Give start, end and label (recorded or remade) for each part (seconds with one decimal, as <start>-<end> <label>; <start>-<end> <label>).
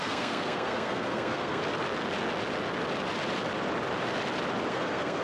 0.0-1.6 remade; 1.6-4.7 recorded; 4.7-5.2 remade